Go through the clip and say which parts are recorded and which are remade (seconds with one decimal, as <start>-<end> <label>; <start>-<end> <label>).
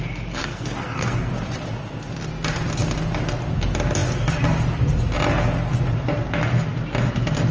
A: 0.0-0.4 recorded; 0.4-1.3 remade; 1.3-7.5 recorded